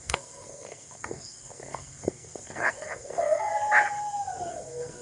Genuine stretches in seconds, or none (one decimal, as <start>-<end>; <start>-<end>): 3.5-4.5